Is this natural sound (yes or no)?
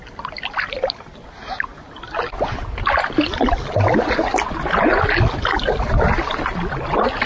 yes